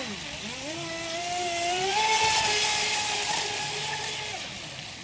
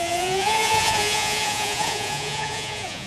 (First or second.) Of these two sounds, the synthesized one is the second